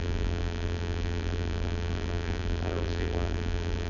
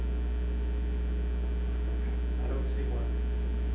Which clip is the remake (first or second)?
first